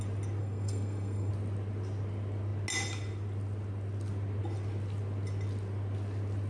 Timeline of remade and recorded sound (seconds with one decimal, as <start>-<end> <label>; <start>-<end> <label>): 0.0-0.4 recorded; 0.4-1.3 remade; 1.3-6.5 recorded